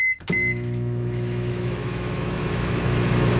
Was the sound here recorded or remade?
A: remade